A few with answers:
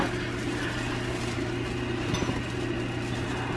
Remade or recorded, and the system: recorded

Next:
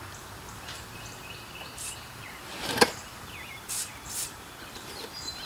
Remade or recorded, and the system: remade, vocoder, BigVGAN v2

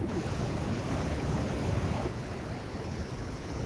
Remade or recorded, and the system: remade, codec, HILCodec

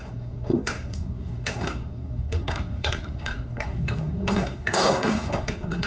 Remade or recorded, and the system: remade, codec, SNAC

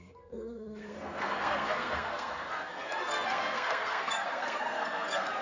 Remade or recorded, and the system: remade, codec, SNAC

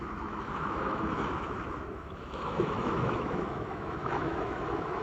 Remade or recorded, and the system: remade, autoencoder, DAC-VAE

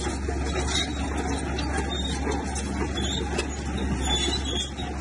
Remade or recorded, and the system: recorded